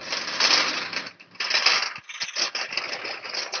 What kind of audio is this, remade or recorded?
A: recorded